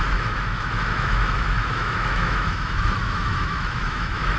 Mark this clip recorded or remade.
remade